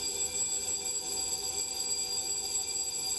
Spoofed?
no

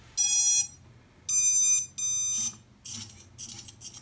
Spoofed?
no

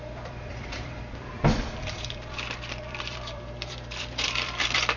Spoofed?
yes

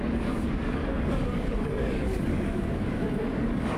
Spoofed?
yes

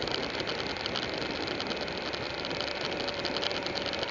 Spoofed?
no